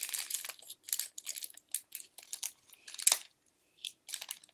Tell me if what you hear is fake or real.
real